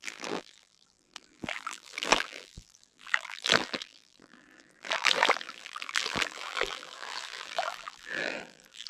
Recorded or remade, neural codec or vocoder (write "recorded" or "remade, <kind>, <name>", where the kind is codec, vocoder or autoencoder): remade, vocoder, BigVGAN v2